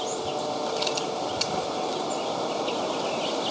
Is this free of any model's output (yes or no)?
yes